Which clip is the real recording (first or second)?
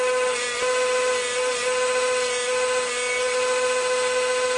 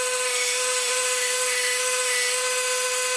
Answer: first